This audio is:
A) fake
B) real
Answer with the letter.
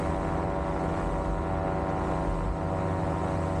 B